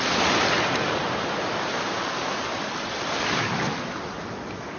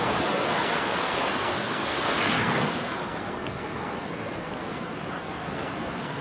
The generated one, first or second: second